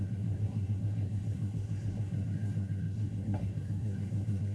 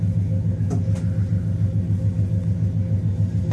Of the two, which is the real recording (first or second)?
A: second